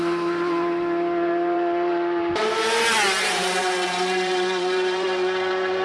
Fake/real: fake